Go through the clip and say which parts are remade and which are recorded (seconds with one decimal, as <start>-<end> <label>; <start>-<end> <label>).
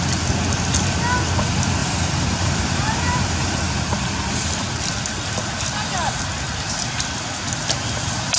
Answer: 0.0-1.8 recorded; 1.8-3.6 remade; 3.6-8.4 recorded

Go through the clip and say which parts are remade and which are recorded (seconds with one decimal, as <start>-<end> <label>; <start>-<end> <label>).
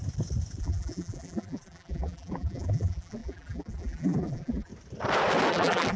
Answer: 0.0-0.6 recorded; 0.6-4.7 remade; 4.7-5.5 recorded; 5.5-6.0 remade